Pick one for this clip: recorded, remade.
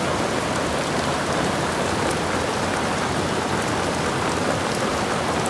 remade